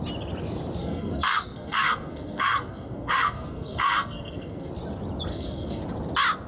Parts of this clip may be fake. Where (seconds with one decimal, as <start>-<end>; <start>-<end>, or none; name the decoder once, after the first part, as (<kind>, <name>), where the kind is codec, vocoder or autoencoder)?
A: 0.8-4.7 (codec, SNAC); 5.3-5.8

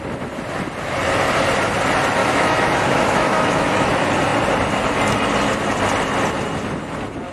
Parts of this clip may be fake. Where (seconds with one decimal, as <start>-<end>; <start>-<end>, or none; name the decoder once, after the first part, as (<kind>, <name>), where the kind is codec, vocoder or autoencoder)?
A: 2.2-3.9 (autoencoder, DAC-VAE)

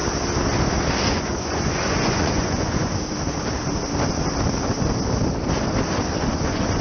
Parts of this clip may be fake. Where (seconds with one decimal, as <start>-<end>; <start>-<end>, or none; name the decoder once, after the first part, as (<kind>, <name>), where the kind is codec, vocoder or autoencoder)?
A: 1.1-2.9 (vocoder, Vocos); 6.2-6.8

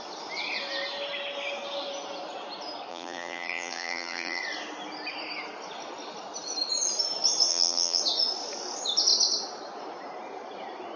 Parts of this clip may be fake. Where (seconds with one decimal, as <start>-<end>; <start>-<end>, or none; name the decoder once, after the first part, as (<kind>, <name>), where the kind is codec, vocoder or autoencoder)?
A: 2.9-4.4 (vocoder, BigVGAN v2); 7.5-8.0

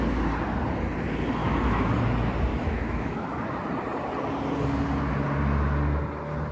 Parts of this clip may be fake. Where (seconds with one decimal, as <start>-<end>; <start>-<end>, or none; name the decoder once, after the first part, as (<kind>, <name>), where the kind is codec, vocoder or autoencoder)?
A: 1.4-1.9 (autoencoder, DAC-VAE); 2.5-3.3

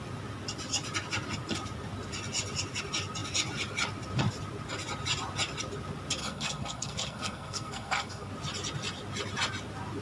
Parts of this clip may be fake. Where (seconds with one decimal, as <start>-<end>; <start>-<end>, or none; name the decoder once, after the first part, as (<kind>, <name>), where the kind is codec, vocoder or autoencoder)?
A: 6.2-8.3 (codec, SNAC)

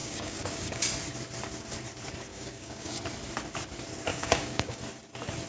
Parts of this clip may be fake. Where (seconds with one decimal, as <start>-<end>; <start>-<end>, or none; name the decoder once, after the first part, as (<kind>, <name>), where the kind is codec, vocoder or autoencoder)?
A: 0.0-0.8 (codec, DAC); 2.3-3.0; 4.1-4.8

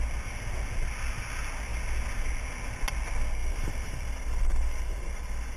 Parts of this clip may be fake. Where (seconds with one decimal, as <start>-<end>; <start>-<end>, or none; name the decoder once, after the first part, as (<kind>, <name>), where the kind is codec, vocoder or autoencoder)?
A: 3.4-5.6 (vocoder, BigVGAN v2)